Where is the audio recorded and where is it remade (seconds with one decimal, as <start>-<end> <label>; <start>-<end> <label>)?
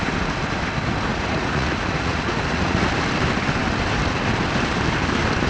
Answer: 0.0-1.1 recorded; 1.1-2.9 remade; 2.9-5.5 recorded